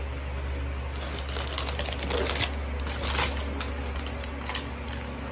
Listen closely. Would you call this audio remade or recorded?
recorded